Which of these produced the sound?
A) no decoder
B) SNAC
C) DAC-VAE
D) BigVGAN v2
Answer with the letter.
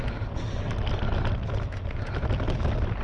A